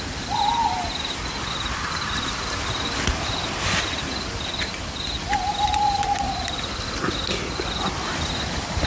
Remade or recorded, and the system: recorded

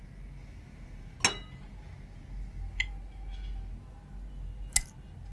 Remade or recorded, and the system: recorded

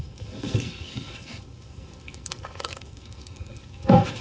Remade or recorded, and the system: remade, codec, SNAC